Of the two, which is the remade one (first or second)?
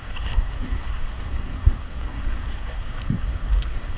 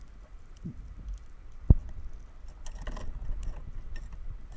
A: first